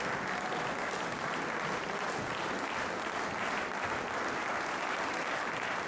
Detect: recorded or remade recorded